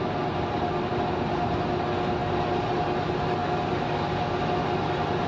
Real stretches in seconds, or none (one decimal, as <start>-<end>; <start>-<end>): 0.0-5.3